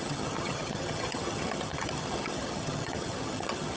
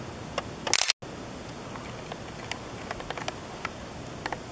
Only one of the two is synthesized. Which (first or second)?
first